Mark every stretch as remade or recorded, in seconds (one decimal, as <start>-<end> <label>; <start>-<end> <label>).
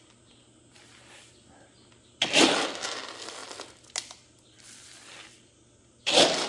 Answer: 0.0-6.5 recorded